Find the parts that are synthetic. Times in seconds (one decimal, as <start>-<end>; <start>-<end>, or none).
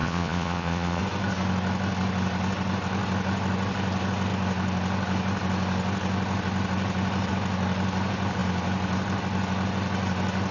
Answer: 0.0-1.0